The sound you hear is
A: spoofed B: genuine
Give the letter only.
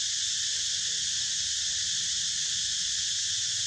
B